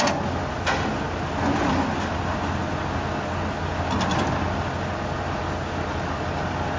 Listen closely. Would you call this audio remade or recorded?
recorded